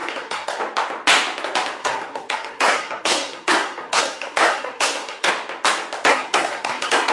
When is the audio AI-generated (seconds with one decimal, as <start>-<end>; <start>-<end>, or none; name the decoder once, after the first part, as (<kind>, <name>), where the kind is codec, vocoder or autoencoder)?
0.0-0.6 (codec, SNAC); 1.8-5.3; 6.1-7.1